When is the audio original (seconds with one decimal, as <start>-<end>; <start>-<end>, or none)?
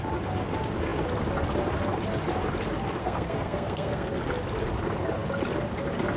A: 0.0-3.0; 4.2-6.2